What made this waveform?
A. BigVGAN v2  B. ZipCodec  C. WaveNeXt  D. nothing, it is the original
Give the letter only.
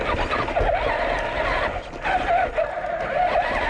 D